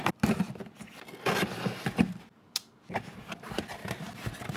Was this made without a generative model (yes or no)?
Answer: yes